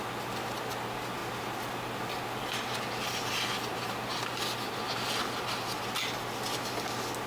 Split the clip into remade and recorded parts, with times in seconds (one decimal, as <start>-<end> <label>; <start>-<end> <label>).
0.0-7.3 recorded